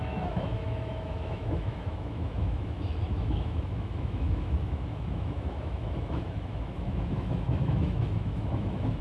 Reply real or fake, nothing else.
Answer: fake